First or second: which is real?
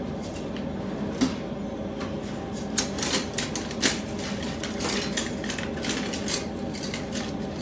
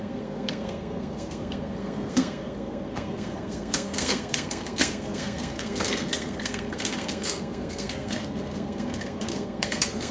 first